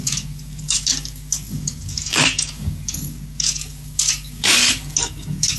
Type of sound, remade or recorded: remade